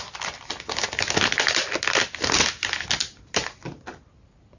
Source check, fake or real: real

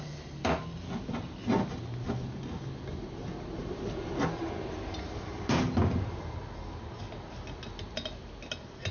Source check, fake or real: real